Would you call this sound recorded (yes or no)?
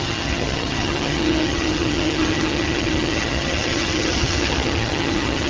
no